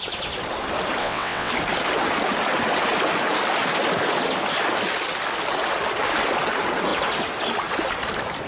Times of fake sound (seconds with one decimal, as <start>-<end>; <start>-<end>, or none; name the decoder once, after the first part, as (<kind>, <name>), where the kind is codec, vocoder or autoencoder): 1.0-1.5 (vocoder, WaveNeXt)